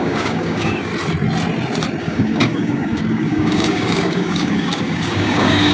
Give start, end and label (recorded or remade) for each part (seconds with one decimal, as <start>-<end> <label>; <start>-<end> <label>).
0.0-0.9 remade; 0.9-2.0 recorded; 2.0-5.7 remade

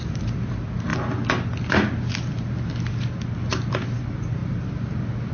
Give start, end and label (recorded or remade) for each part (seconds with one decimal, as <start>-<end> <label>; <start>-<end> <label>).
0.0-5.3 recorded

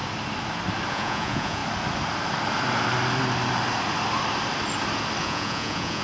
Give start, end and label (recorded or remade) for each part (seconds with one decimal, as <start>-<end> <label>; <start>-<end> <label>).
0.0-0.9 recorded; 0.9-1.6 remade; 1.6-5.2 recorded; 5.2-6.0 remade

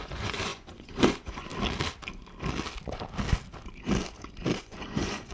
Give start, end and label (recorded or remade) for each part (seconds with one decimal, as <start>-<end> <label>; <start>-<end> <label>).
0.0-1.5 remade; 1.5-4.6 recorded; 4.6-5.3 remade

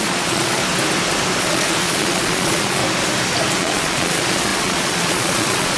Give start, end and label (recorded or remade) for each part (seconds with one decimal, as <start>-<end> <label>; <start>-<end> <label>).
0.0-0.6 remade; 0.6-1.4 recorded; 1.4-2.8 remade; 2.8-3.6 recorded; 3.6-5.8 remade